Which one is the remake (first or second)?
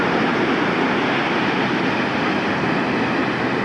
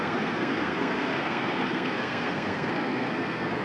second